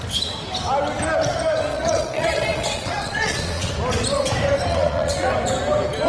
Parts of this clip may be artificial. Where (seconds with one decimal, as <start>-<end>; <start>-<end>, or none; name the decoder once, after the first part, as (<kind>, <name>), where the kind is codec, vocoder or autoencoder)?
1.7-3.7 (vocoder, Vocos); 4.7-5.3

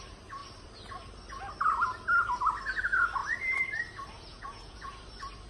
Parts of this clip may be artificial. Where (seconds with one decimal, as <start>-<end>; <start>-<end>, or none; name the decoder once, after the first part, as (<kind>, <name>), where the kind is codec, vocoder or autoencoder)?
4.3-5.0 (vocoder, Vocos)

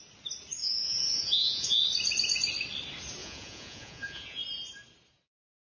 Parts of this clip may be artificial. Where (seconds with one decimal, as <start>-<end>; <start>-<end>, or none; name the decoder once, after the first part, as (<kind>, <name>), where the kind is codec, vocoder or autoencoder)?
0.6-1.8 (vocoder, Vocos); 3.2-4.4